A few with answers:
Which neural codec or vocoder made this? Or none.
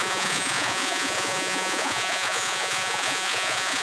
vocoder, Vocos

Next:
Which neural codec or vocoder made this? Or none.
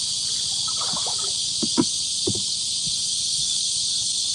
none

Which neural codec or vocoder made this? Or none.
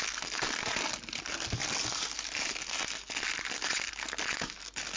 none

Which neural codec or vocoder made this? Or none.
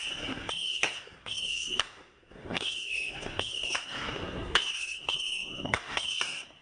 codec, SNAC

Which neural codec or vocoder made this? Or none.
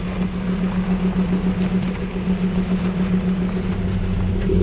none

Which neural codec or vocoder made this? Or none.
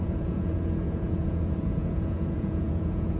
vocoder, Vocos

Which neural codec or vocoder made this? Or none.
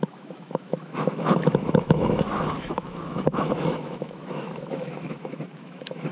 autoencoder, DAC-VAE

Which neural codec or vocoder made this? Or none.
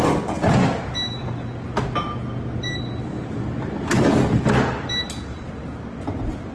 none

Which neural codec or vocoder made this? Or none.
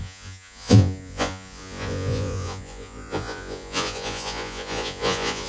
vocoder, Vocos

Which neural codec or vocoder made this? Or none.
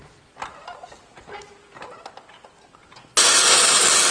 none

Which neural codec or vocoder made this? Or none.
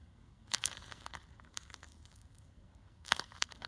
codec, SNAC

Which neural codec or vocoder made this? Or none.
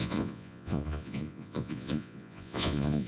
vocoder, Vocos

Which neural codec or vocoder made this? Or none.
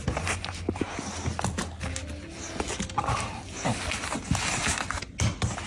none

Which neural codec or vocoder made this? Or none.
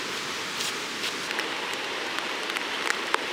none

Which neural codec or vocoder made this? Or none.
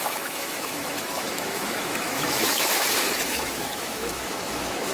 autoencoder, DAC-VAE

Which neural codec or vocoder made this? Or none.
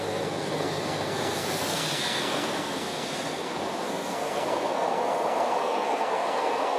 codec, SNAC